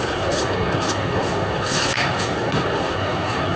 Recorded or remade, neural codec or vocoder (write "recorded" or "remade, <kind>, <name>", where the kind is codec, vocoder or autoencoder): remade, codec, SNAC